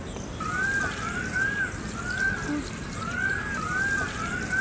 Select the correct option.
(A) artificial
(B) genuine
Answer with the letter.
B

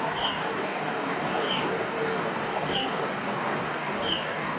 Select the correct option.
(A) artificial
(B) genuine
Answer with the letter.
A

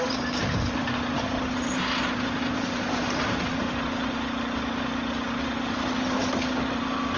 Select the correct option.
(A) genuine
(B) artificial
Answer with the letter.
A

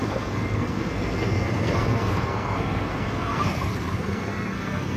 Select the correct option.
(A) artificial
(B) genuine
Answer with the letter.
A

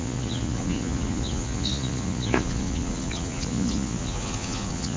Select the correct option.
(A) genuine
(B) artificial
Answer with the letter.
B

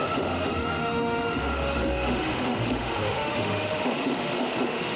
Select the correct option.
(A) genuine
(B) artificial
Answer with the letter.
B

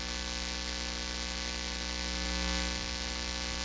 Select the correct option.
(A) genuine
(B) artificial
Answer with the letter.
A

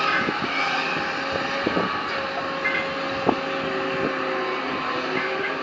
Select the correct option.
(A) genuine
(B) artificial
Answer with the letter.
A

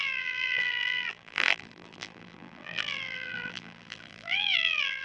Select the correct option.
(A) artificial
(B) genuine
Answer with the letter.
A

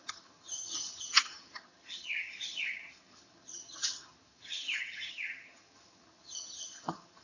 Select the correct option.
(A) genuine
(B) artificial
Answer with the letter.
B